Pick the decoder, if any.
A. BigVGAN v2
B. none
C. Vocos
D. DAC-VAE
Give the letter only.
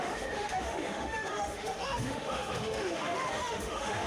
D